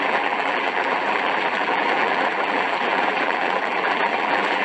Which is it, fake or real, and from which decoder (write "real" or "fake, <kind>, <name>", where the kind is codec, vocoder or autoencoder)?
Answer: fake, vocoder, BigVGAN v2